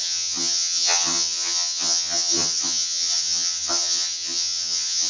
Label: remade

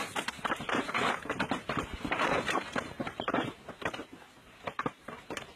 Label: remade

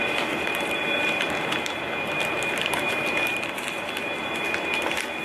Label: recorded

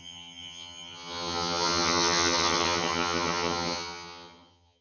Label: remade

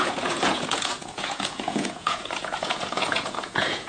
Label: remade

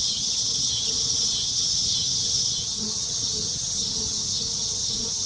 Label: remade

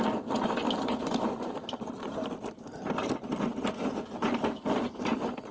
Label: recorded